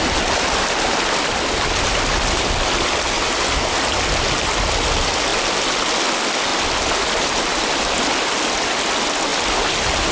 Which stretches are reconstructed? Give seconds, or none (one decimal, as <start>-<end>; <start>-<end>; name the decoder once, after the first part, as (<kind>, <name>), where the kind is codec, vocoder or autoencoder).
none